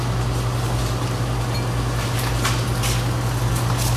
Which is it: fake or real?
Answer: real